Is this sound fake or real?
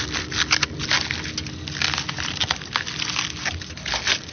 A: real